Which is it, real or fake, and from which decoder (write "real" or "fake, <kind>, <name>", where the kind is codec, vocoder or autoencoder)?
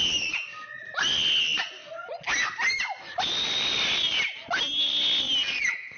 real